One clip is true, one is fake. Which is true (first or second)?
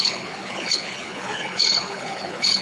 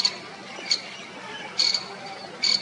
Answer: second